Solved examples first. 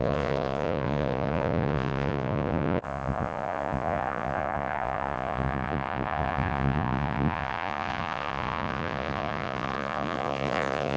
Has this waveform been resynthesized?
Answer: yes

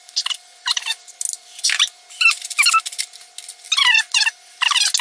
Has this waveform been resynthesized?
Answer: no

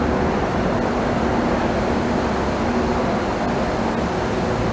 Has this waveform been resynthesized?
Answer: no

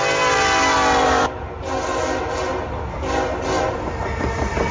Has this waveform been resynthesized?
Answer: no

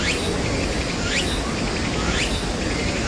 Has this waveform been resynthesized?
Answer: no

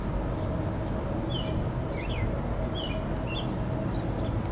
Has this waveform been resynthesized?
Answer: no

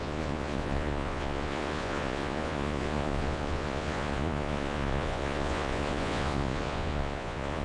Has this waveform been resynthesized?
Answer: yes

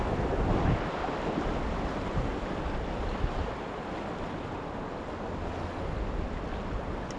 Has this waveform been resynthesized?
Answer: no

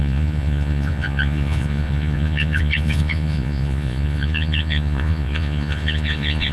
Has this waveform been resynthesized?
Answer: yes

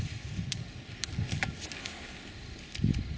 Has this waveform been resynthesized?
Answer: no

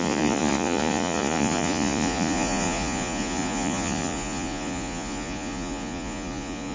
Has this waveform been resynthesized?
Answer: yes